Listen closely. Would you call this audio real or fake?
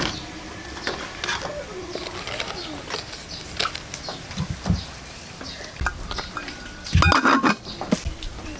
real